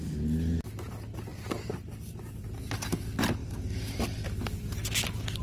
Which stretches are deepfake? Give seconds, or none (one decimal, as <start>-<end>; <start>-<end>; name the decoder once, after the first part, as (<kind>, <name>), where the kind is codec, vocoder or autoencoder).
1.3-1.9 (vocoder, BigVGAN v2)